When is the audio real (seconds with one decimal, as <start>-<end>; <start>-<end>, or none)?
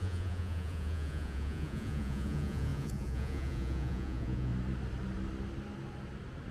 4.5-6.5